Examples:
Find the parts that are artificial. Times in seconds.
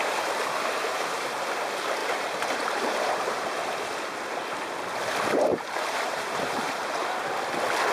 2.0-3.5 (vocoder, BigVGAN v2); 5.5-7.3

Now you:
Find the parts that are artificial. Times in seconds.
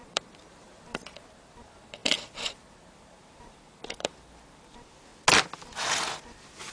0.0-5.1 (vocoder, BigVGAN v2); 5.6-6.7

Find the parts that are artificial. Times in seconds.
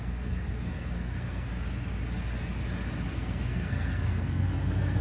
0.0-1.5 (codec, SNAC); 3.1-5.0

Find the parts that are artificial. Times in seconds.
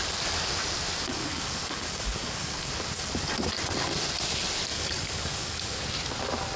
1.1-2.7 (codec, DAC); 4.7-5.8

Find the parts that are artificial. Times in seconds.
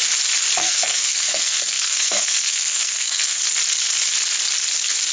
0.6-3.4 (codec, SNAC)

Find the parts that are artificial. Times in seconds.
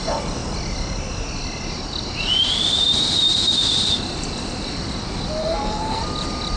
5.4-6.0 (codec, SNAC)